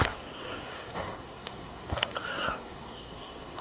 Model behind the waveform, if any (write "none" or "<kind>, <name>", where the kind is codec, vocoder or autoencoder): codec, SNAC